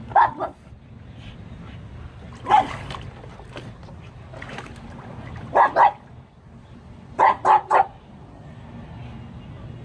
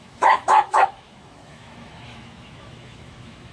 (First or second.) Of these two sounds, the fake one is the second